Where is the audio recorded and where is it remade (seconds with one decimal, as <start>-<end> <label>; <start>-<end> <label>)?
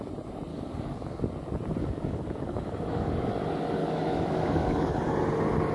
0.0-0.5 recorded; 0.5-1.2 remade; 1.2-1.8 recorded; 1.8-3.3 remade; 3.3-3.8 recorded; 3.8-4.9 remade; 4.9-5.7 recorded